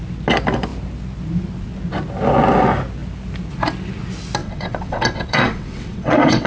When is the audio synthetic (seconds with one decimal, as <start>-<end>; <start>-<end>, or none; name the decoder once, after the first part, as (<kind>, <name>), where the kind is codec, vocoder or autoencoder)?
4.4-6.5 (vocoder, WaveNeXt)